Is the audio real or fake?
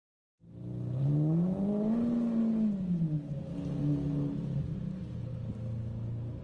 real